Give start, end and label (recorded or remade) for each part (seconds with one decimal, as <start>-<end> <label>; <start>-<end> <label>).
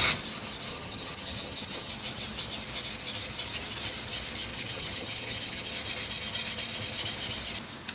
0.0-0.7 recorded; 0.7-1.9 remade; 1.9-4.5 recorded; 4.5-5.7 remade; 5.7-7.9 recorded